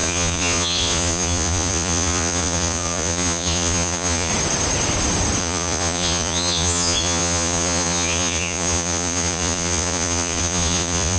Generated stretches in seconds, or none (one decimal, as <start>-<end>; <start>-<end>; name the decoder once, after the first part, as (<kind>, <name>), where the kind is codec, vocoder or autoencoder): 0.0-4.3 (vocoder, Vocos); 5.4-11.2